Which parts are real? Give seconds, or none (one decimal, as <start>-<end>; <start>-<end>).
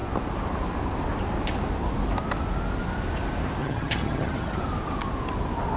0.0-3.6; 4.6-5.8